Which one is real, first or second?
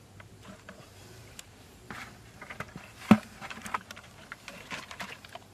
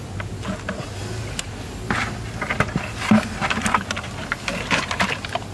second